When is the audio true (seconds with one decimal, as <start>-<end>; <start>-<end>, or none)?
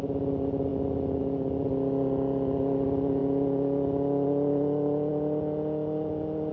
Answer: 0.0-6.5